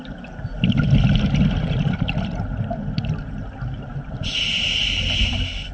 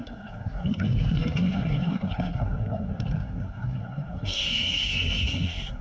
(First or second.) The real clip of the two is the first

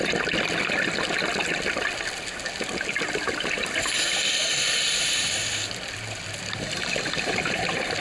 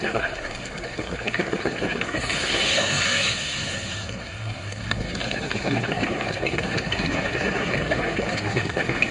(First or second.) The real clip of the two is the first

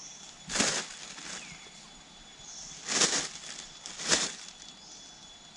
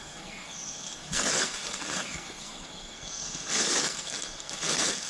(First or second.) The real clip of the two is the first